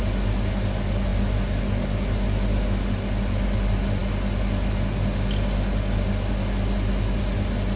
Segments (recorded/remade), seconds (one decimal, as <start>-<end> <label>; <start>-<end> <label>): 0.0-7.8 recorded